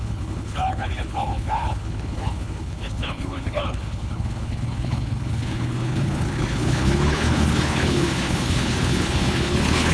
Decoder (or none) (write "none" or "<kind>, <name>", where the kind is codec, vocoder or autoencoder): codec, HILCodec